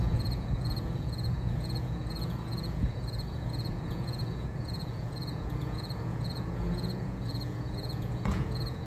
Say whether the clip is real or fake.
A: fake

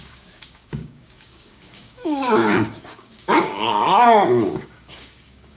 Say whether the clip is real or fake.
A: fake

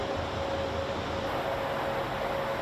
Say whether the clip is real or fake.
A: real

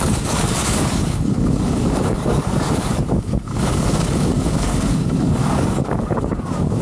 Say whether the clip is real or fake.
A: fake